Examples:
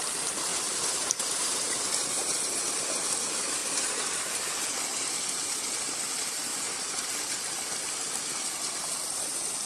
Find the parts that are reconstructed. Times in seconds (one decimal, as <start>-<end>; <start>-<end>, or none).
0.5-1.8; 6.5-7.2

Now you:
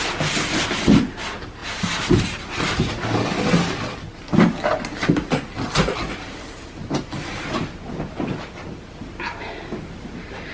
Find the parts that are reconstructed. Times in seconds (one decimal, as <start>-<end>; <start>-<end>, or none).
0.0-10.5

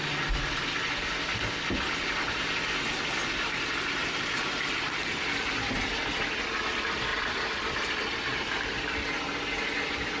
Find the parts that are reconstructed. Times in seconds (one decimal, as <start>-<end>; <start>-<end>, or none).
4.0-4.9; 7.1-8.0